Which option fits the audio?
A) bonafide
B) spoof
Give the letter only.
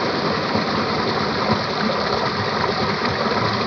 A